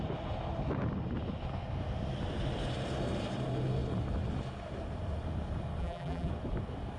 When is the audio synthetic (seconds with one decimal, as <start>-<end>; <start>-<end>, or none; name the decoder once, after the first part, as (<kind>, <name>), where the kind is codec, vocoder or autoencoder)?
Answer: 5.8-6.3 (vocoder, BigVGAN v2)